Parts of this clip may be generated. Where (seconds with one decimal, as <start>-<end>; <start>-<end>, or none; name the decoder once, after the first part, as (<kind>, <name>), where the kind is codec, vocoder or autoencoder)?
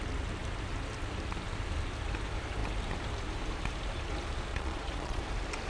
4.5-5.2 (vocoder, Vocos)